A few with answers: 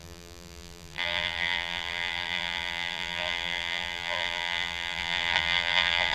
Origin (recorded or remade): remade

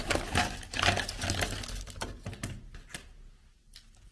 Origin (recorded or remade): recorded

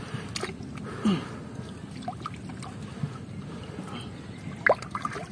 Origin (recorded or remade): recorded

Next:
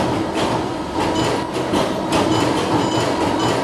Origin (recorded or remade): recorded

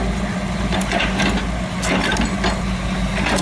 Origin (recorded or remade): recorded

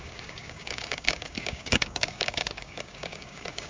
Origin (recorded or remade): remade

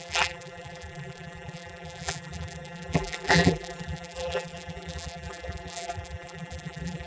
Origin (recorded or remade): remade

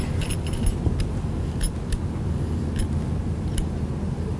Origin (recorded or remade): recorded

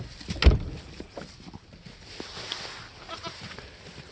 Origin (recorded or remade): recorded